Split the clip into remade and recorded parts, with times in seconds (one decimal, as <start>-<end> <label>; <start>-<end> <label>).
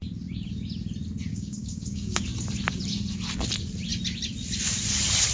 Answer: 0.0-1.3 recorded; 1.3-2.2 remade; 2.2-5.3 recorded